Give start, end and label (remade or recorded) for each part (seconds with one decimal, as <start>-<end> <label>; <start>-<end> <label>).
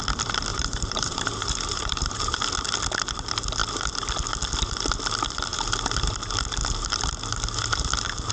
0.0-0.5 recorded; 0.5-2.5 remade; 2.5-8.3 recorded